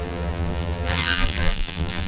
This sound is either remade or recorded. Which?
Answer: remade